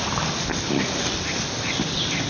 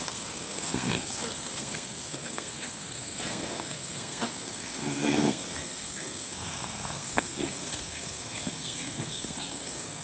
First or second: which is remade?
second